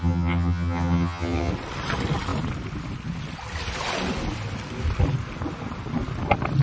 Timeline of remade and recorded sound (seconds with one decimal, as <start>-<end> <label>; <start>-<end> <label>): 0.0-1.5 remade; 1.5-6.6 recorded